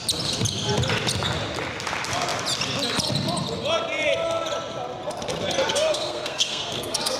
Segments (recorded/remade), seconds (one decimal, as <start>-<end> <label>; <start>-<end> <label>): 0.0-5.7 recorded; 5.7-7.2 remade